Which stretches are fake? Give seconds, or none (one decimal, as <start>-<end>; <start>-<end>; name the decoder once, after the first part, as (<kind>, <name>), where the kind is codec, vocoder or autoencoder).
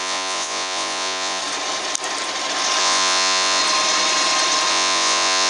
0.0-1.4 (vocoder, Vocos); 2.8-3.6; 4.7-5.5